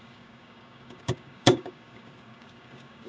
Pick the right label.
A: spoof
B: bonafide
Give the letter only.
A